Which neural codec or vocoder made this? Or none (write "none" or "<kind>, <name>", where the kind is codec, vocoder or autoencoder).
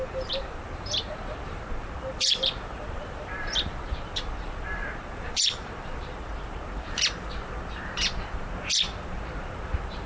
vocoder, BigVGAN v2